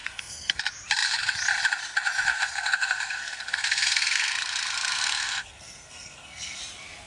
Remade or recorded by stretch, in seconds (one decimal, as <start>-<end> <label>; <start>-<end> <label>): 0.0-0.6 remade; 0.6-2.3 recorded; 2.3-6.6 remade; 6.6-7.1 recorded